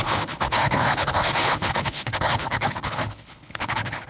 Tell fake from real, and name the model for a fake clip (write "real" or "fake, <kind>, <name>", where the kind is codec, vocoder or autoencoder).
fake, codec, HILCodec